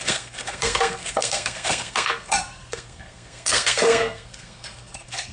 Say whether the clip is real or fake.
fake